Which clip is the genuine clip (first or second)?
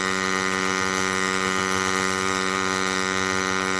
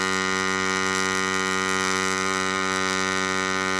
second